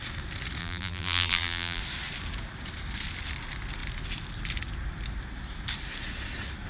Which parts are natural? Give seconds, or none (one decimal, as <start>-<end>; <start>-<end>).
0.0-0.6; 1.8-6.7